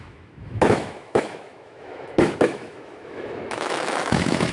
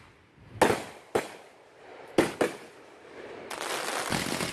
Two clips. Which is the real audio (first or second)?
second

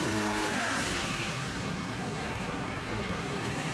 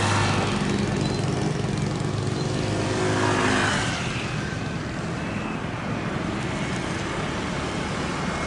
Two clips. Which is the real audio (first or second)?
second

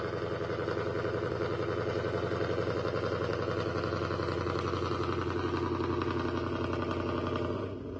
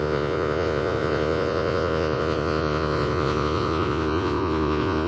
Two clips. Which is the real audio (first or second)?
first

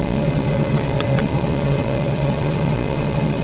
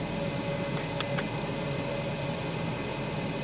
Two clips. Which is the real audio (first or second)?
second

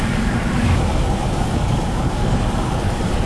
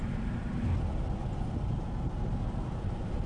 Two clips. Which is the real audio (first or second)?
second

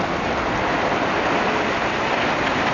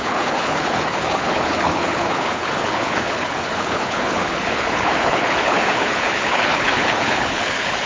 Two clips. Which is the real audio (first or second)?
first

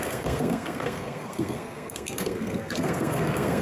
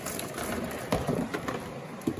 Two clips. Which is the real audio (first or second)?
second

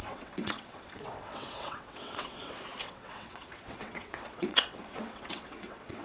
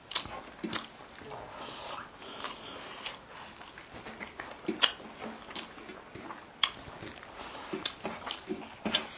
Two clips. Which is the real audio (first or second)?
second